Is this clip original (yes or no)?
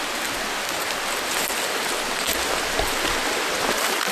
yes